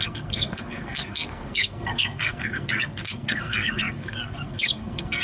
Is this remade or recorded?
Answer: remade